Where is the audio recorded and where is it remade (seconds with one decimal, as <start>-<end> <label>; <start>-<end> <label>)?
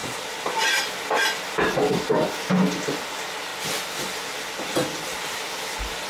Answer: 0.0-1.8 remade; 1.8-3.5 recorded; 3.5-5.4 remade; 5.4-6.1 recorded